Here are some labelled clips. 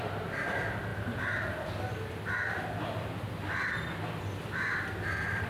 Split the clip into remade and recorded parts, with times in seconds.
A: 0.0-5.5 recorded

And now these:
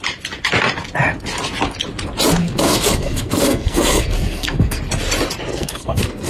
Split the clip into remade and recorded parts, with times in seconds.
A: 0.0-2.4 recorded; 2.4-4.8 remade; 4.8-5.5 recorded; 5.5-6.3 remade

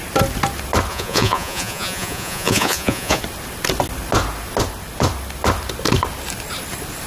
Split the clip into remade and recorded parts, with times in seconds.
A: 0.0-0.9 recorded; 0.9-3.2 remade; 3.2-7.1 recorded

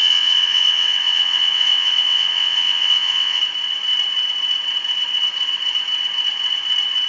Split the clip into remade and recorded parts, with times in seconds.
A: 0.0-3.4 remade; 3.4-7.1 recorded